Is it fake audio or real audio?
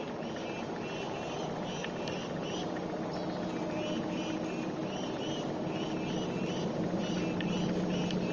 real